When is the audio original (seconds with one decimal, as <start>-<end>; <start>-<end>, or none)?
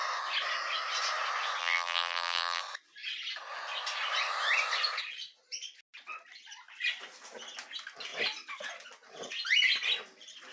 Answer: 0.0-1.6; 2.6-10.5